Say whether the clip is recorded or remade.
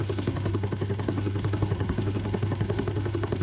remade